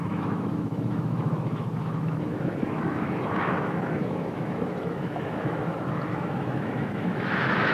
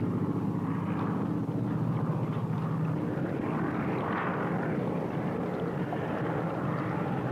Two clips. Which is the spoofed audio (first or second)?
first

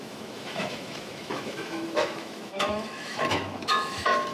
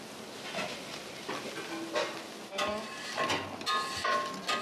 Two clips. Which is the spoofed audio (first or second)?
first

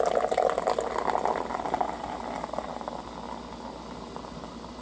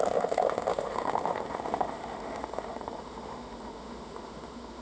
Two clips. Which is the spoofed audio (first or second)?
second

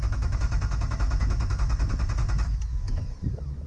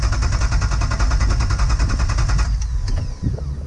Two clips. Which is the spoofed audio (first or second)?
first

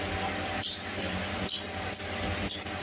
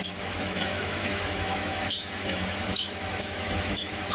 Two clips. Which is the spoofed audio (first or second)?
second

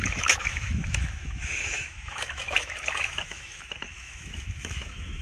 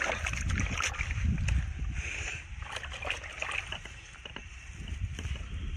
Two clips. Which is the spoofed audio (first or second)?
first